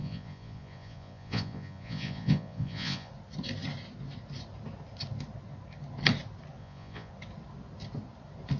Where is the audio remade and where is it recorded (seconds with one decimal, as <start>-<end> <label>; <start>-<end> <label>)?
0.0-3.1 remade; 3.1-6.6 recorded; 6.6-7.1 remade; 7.1-8.6 recorded